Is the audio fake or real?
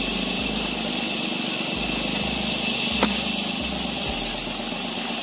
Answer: real